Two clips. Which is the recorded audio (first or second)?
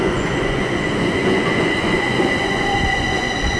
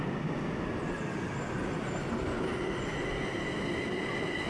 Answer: second